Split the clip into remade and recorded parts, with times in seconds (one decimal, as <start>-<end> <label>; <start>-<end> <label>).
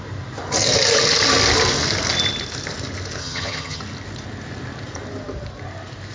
0.0-3.2 recorded; 3.2-3.8 remade; 3.8-6.1 recorded